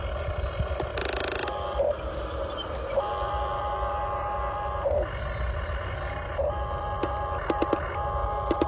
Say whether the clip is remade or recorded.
recorded